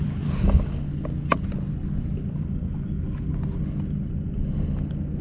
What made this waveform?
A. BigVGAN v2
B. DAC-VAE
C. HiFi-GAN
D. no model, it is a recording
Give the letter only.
D